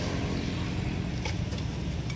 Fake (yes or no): no